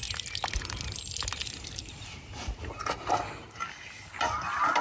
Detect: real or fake real